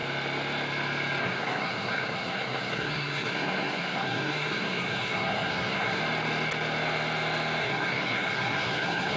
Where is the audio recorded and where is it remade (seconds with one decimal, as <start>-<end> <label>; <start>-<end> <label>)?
0.0-1.2 recorded; 1.2-6.0 remade; 6.0-7.6 recorded; 7.6-9.2 remade